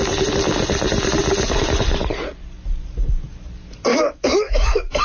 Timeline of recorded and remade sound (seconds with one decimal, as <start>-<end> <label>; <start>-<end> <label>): 0.0-3.9 recorded; 3.9-5.0 remade